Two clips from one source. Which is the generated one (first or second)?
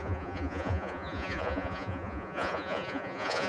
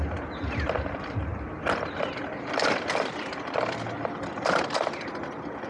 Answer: first